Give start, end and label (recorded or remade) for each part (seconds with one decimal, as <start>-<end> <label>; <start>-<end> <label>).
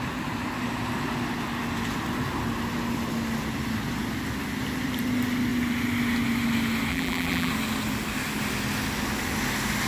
0.0-6.9 recorded; 6.9-7.5 remade; 7.5-9.9 recorded